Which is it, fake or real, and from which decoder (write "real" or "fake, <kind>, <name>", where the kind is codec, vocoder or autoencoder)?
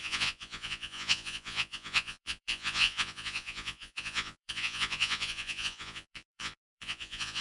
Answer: fake, vocoder, Vocos